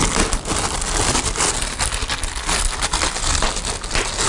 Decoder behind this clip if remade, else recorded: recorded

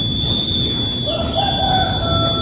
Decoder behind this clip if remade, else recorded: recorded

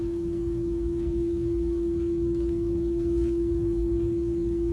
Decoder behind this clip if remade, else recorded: remade, codec, SNAC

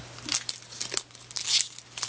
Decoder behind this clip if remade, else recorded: recorded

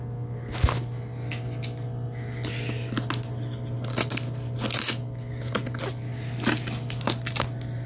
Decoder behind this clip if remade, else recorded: recorded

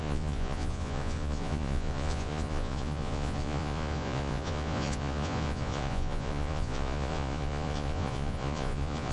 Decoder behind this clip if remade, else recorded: remade, vocoder, Vocos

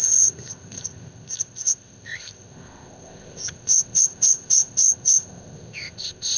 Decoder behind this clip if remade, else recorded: remade, codec, ZipCodec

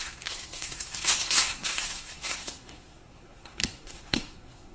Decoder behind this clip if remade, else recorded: remade, codec, SNAC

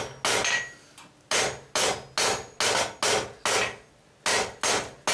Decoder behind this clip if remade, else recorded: recorded